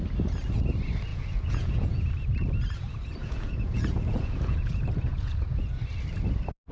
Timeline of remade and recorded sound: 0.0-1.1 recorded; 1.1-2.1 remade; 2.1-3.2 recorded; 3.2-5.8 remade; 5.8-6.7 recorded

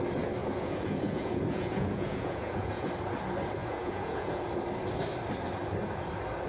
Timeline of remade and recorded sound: 0.0-0.4 recorded; 0.4-2.9 remade; 2.9-3.6 recorded; 3.6-4.5 remade; 4.5-6.5 recorded

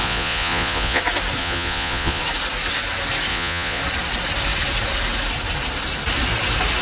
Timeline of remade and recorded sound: 0.0-1.0 remade; 1.0-1.4 recorded; 1.4-2.2 remade; 2.2-3.3 recorded; 3.3-3.8 remade; 3.8-6.8 recorded

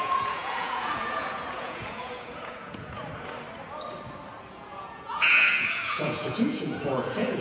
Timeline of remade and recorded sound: 0.0-3.0 remade; 3.0-4.5 recorded; 4.5-7.4 remade

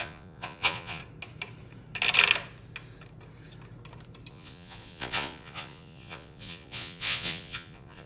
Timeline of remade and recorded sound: 0.0-1.0 remade; 1.0-4.3 recorded; 4.3-8.1 remade

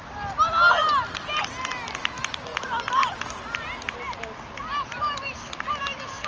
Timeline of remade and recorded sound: 0.0-6.3 recorded